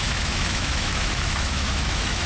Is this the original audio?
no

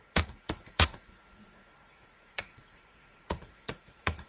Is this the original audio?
no